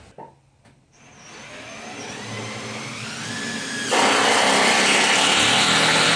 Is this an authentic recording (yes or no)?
yes